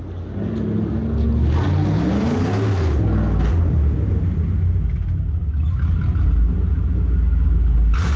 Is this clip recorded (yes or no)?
yes